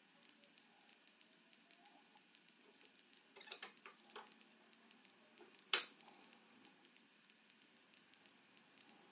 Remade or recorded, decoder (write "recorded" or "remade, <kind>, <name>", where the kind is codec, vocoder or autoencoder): remade, vocoder, BigVGAN v2